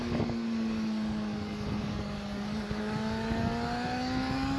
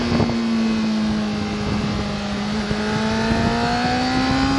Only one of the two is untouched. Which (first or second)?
second